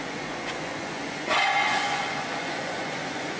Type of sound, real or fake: fake